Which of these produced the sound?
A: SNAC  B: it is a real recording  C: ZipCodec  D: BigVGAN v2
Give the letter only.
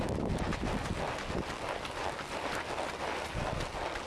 B